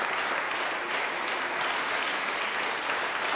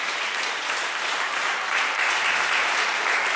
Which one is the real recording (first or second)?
first